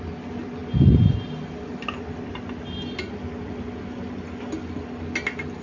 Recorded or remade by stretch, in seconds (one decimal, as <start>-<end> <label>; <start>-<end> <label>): 0.0-5.6 recorded